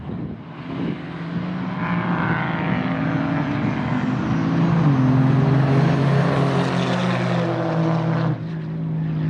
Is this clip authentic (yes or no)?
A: yes